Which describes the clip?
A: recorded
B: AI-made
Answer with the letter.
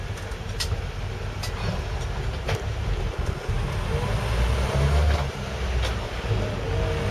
A